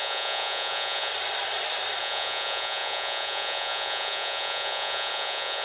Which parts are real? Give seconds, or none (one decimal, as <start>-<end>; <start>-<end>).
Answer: 1.1-2.0